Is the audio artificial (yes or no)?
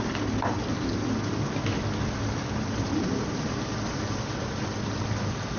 no